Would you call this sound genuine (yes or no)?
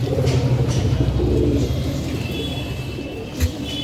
yes